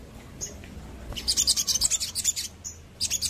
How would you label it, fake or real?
real